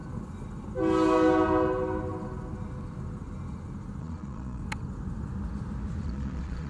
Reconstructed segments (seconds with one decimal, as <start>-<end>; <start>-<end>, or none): 4.0-4.6; 6.0-6.7